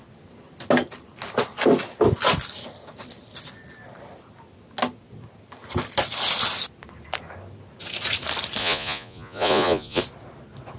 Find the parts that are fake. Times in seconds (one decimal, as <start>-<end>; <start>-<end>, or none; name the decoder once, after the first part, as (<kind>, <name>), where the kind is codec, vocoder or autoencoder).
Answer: 8.6-10.0 (vocoder, Vocos)